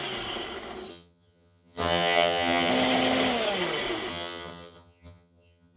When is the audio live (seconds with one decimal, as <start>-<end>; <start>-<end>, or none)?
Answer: 0.0-0.9; 2.7-4.1